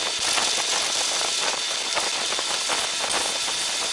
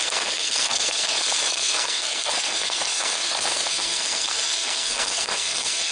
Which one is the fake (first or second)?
second